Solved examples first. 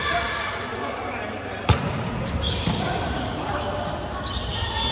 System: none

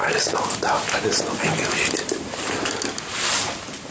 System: none